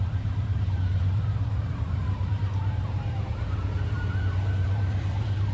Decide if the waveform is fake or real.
fake